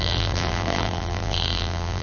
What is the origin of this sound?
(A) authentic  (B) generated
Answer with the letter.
B